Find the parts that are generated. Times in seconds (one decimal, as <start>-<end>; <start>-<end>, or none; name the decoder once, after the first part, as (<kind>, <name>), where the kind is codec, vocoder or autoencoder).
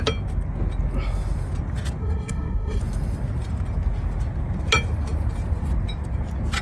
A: 2.0-2.8 (codec, SNAC)